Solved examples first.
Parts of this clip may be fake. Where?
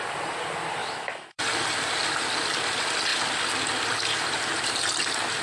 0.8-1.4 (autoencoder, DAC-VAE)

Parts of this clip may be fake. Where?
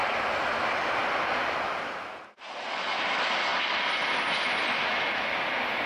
none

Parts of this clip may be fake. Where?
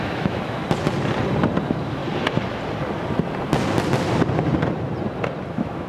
0.0-0.6 (autoencoder, DAC-VAE); 1.6-2.0; 5.5-5.9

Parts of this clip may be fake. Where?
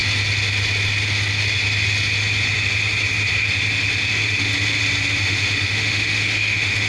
4.1-4.5 (autoencoder, DAC-VAE); 5.2-6.9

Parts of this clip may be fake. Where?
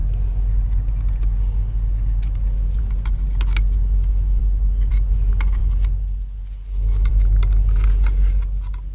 none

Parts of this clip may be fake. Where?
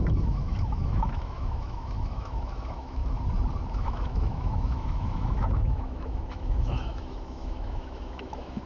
0.0-3.0 (autoencoder, DAC-VAE); 3.7-8.7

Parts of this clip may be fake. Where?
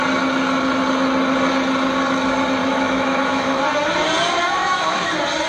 2.6-3.6 (autoencoder, DAC-VAE); 4.6-5.1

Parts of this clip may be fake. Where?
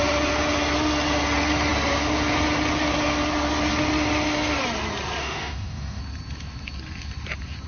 5.2-6.0 (autoencoder, DAC-VAE)